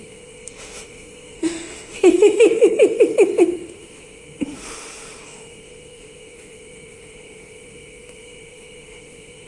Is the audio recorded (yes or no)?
no